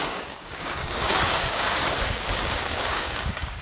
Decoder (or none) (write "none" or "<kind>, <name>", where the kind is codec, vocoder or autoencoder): codec, DAC